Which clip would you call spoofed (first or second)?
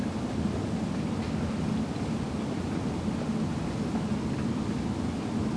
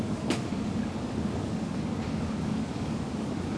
second